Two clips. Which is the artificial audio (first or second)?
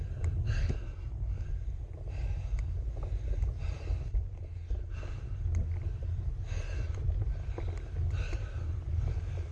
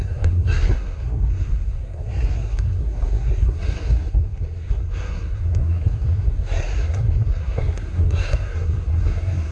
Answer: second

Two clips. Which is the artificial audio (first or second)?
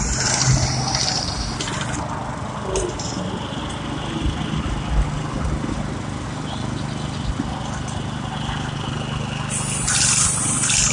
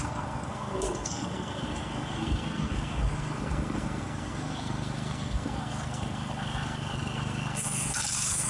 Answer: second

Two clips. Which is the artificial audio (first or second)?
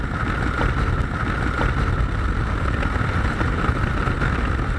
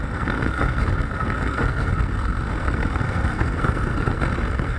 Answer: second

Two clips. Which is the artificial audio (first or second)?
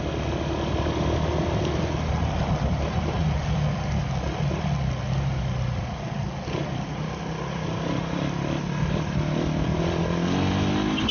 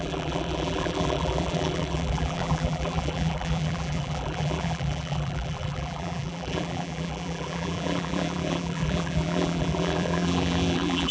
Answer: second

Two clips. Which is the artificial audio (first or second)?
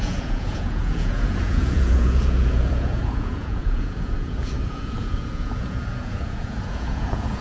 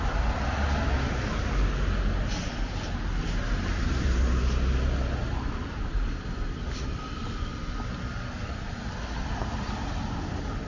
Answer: first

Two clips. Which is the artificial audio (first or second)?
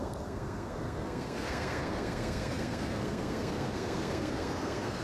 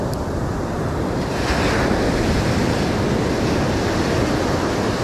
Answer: first